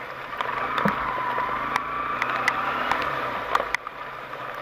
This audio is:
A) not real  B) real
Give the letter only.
B